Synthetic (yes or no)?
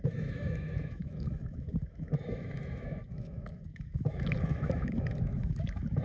yes